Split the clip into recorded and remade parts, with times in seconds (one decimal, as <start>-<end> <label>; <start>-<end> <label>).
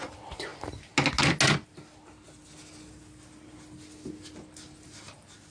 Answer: 0.0-5.5 recorded